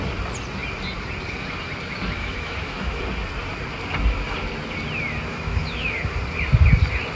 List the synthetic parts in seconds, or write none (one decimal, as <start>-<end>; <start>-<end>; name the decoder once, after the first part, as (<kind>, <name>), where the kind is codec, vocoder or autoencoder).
2.2-3.0 (autoencoder, DAC-VAE); 5.3-6.2